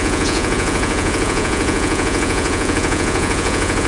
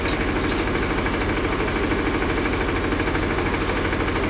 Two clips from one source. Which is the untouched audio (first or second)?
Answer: second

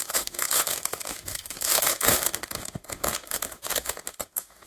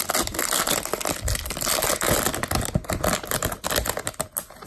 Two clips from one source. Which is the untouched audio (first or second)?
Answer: second